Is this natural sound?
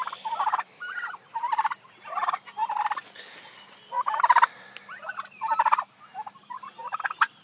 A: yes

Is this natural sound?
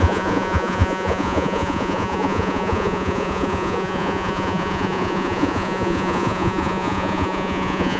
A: no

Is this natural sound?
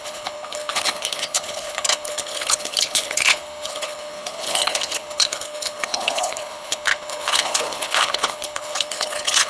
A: no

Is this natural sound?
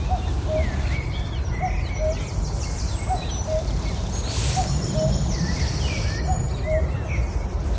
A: yes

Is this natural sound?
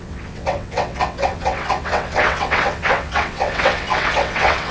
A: no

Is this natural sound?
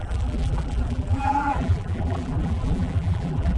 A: no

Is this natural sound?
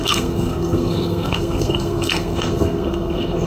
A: no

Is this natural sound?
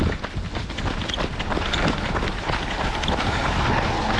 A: yes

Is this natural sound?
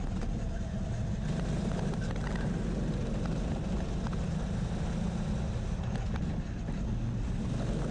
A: yes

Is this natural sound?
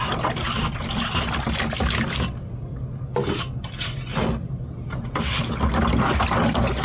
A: yes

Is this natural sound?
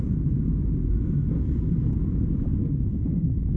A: yes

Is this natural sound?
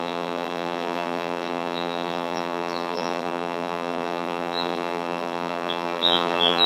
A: no